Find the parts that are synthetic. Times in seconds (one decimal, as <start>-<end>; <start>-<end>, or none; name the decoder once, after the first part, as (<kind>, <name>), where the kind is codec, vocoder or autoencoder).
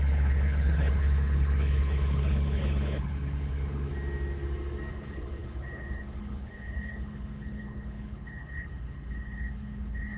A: 0.0-3.9 (codec, HILCodec); 4.9-10.2